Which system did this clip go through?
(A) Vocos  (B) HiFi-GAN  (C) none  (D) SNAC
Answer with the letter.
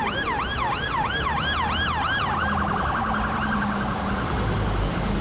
C